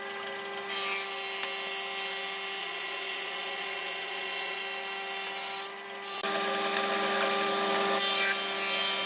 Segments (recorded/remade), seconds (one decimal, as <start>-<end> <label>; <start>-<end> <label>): 0.0-2.6 recorded; 2.6-4.6 remade; 4.6-9.1 recorded